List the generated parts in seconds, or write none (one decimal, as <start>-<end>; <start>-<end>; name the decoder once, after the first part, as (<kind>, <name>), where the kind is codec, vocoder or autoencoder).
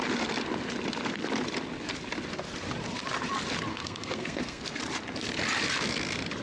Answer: 3.7-4.8 (codec, SNAC)